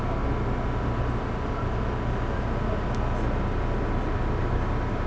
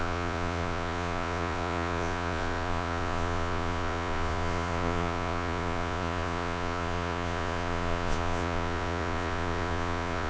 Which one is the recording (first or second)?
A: first